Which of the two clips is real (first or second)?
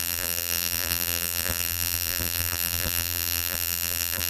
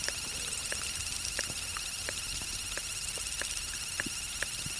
second